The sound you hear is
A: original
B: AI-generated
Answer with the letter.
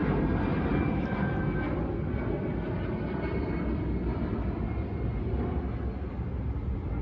A